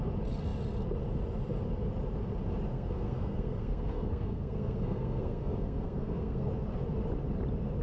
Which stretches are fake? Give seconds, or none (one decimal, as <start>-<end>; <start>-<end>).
2.7-6.5